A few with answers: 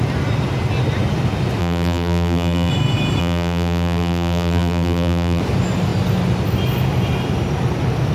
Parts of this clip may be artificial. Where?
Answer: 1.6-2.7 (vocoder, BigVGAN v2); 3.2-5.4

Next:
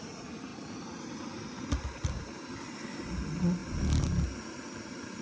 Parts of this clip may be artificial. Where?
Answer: none

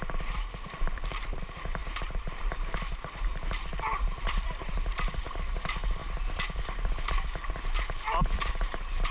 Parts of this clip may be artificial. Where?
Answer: 0.0-6.0 (vocoder, BigVGAN v2); 8.5-9.1

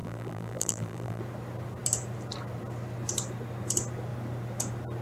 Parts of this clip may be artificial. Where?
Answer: 0.0-1.2 (vocoder, BigVGAN v2)

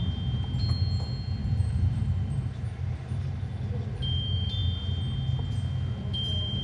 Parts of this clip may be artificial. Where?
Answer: 1.4-3.4 (vocoder, BigVGAN v2)